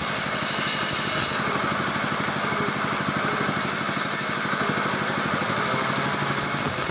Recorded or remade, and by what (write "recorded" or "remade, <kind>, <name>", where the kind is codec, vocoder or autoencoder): recorded